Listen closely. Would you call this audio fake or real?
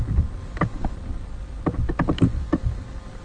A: real